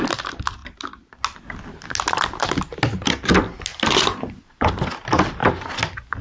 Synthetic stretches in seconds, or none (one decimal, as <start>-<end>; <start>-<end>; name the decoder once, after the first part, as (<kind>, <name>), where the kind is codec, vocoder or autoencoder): none